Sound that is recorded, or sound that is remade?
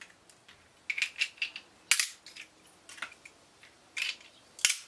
recorded